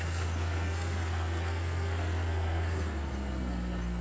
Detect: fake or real fake